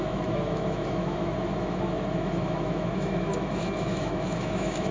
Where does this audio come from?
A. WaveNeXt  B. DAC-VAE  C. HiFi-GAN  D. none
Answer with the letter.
B